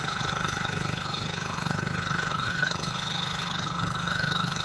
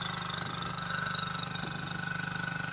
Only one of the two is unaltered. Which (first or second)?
second